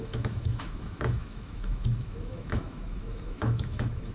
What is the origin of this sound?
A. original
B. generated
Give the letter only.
B